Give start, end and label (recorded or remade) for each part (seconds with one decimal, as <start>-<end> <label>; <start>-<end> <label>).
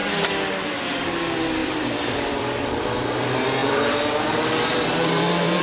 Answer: 0.0-1.6 recorded; 1.6-2.8 remade; 2.8-3.6 recorded; 3.6-5.6 remade